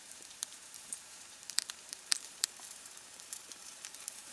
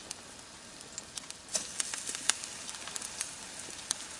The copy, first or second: first